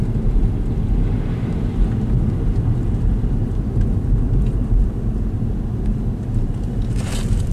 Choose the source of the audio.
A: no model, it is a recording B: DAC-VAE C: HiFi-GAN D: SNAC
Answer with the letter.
A